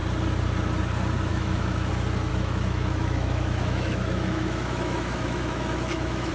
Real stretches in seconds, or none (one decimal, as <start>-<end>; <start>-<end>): 0.0-1.3; 1.9-2.3